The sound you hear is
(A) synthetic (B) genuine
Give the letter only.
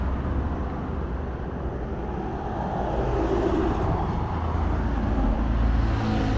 B